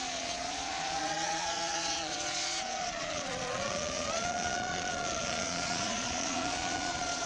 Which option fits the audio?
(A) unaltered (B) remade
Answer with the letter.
B